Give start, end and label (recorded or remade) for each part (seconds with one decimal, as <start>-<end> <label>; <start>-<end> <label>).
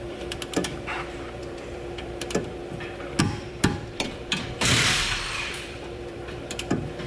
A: 0.0-2.6 remade; 2.6-3.2 recorded; 3.2-7.1 remade